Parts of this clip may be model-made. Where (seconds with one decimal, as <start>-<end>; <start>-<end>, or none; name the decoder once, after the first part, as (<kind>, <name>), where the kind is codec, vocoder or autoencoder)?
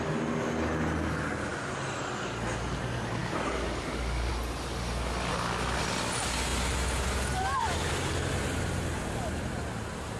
3.2-4.3 (codec, DAC); 5.3-5.8